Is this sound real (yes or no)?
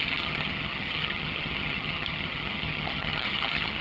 no